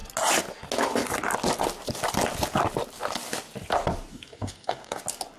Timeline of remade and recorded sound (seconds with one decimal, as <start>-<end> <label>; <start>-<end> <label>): 0.0-4.1 recorded; 4.1-5.0 remade; 5.0-5.4 recorded